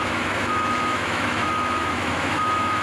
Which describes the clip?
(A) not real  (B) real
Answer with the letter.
A